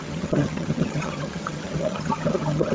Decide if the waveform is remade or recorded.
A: remade